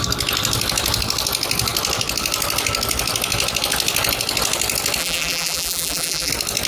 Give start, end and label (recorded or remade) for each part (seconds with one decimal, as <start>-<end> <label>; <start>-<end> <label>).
0.0-5.0 recorded; 5.0-6.3 remade; 6.3-6.7 recorded